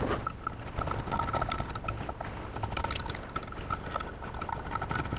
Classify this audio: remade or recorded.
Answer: recorded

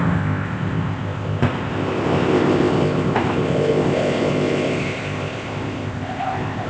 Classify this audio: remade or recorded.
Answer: remade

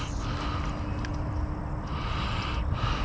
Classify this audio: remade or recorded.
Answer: recorded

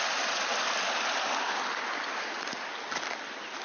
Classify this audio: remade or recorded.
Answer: recorded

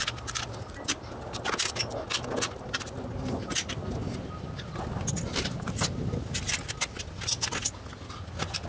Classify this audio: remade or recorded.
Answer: recorded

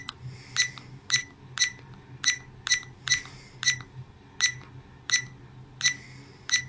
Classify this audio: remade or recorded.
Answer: recorded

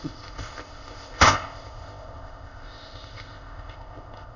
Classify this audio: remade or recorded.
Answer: remade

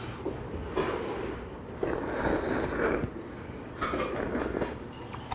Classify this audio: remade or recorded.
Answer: recorded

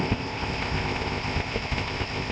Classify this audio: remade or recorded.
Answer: remade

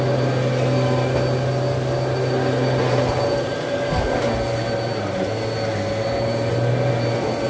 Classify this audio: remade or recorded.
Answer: recorded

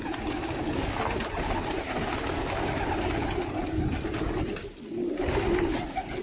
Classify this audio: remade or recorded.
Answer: recorded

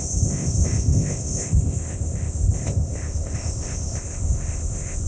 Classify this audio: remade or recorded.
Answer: remade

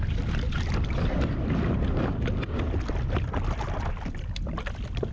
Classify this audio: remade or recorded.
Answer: recorded